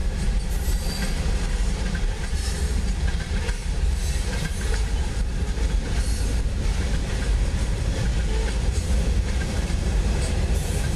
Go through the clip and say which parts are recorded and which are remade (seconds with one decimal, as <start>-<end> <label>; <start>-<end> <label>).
0.0-1.9 recorded; 1.9-3.6 remade; 3.6-4.3 recorded; 4.3-8.1 remade; 8.1-8.6 recorded; 8.6-11.0 remade